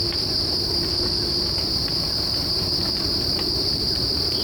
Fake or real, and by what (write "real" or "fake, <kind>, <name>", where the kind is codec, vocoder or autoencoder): fake, vocoder, BigVGAN v2